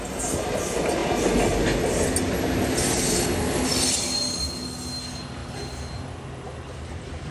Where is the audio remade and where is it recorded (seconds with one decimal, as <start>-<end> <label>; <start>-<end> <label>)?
0.0-7.3 recorded